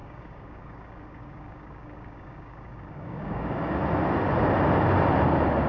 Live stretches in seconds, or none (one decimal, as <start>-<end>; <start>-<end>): 3.8-5.7